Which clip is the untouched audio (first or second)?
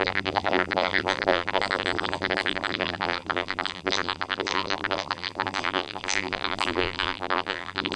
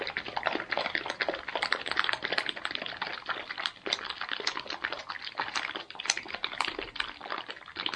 second